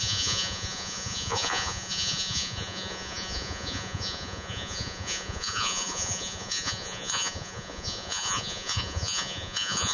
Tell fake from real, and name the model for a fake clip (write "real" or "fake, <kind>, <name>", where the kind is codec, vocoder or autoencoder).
fake, vocoder, Vocos